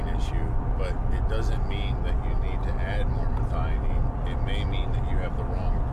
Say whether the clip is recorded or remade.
recorded